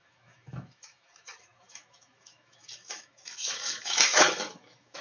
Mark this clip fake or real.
fake